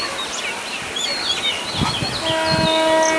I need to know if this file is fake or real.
real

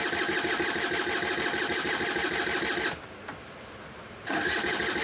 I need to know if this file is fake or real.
fake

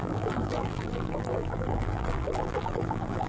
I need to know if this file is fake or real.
fake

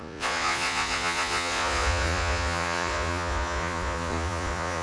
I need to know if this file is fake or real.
fake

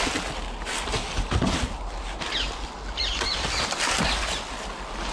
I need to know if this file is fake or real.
real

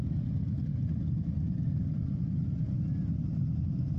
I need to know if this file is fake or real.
real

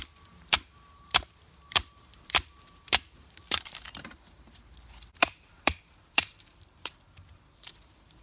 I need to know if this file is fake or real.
fake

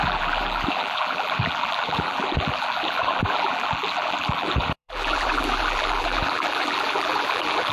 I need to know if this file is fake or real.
fake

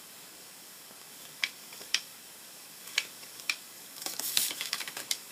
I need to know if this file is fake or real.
fake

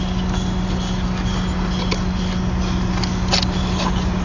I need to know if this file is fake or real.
real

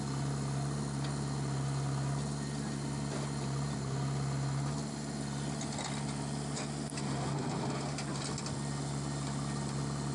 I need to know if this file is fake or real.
real